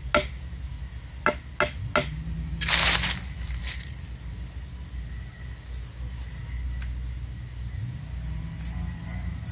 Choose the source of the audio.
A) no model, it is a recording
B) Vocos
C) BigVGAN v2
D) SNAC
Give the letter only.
A